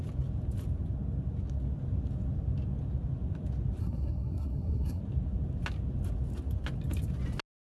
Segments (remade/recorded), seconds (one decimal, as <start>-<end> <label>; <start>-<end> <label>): 0.0-3.8 recorded; 3.8-5.0 remade; 5.0-7.6 recorded